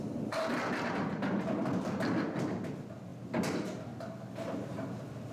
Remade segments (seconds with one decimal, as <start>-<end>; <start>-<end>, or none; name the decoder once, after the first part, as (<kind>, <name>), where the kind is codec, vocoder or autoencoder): none